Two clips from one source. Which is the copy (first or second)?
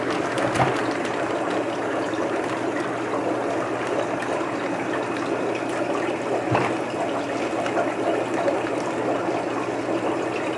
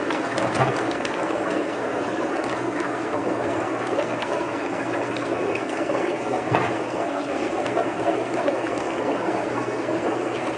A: second